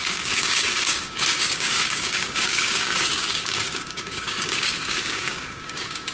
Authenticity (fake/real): fake